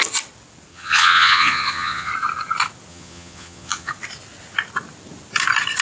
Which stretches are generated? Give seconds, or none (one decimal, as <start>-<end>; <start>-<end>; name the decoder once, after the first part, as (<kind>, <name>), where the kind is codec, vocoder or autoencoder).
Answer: 0.7-2.1 (vocoder, Vocos); 2.9-3.9